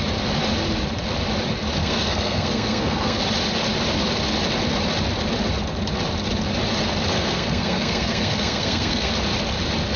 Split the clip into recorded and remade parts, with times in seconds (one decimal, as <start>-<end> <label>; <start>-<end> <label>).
0.0-1.8 recorded; 1.8-3.2 remade; 3.2-7.1 recorded; 7.1-9.1 remade; 9.1-10.0 recorded